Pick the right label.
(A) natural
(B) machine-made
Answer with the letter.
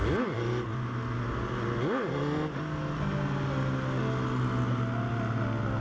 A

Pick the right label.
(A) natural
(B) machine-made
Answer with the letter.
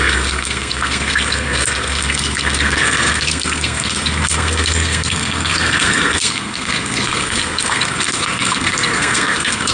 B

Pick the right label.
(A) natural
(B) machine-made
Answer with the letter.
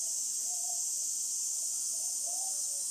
A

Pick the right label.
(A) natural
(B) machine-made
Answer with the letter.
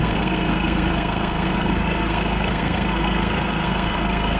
B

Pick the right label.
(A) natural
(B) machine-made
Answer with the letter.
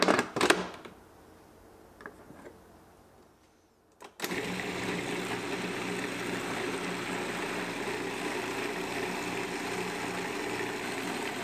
A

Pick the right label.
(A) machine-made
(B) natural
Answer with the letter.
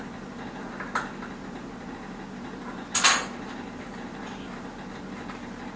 B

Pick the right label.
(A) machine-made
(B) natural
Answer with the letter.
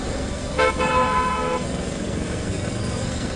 A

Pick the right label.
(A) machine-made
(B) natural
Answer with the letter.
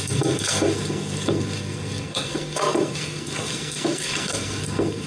A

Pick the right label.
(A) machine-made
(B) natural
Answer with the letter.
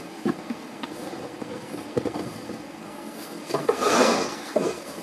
A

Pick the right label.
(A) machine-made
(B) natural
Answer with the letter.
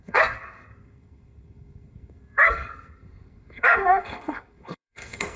A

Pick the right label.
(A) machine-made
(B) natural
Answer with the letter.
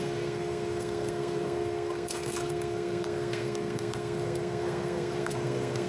A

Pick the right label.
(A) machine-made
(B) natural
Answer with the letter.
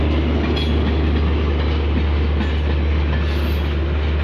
B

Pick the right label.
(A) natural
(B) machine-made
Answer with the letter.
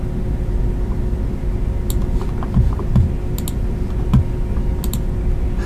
A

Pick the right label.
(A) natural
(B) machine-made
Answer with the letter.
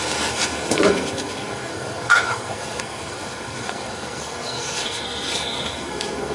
B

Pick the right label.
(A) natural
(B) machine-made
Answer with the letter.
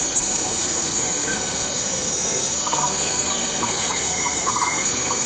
B